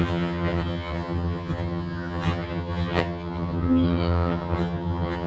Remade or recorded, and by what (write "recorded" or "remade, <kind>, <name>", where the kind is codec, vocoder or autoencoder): remade, vocoder, HiFi-GAN